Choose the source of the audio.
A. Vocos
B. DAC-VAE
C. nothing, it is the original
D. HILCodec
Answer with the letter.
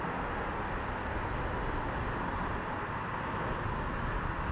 C